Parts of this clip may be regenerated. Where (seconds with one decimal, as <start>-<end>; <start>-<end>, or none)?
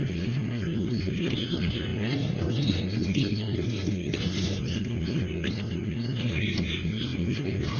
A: 0.0-7.8